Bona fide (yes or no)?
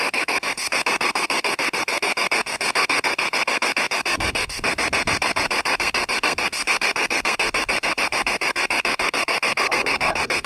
no